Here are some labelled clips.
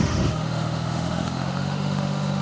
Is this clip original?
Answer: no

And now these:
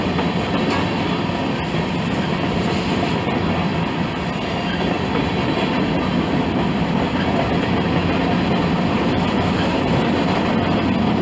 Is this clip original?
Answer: yes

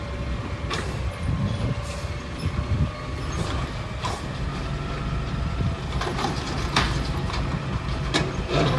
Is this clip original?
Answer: yes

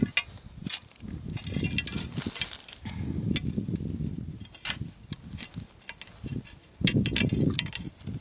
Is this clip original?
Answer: yes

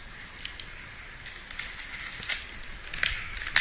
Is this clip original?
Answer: yes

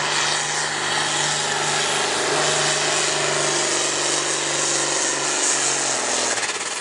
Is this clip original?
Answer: yes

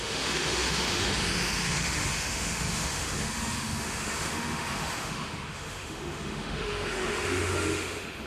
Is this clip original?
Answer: no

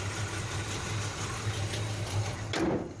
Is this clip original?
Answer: yes